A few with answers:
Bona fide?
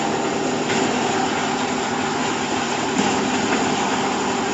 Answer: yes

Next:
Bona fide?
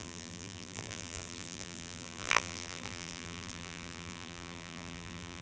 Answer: no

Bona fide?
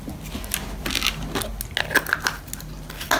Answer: yes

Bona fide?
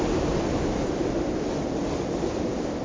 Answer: yes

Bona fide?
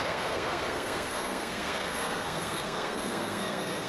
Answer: no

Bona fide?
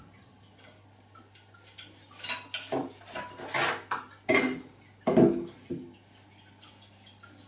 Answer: yes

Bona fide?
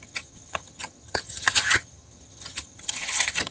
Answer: no